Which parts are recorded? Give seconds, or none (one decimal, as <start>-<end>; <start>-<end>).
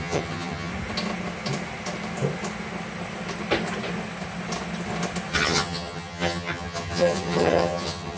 0.7-5.3